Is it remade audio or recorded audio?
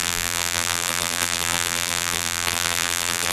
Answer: remade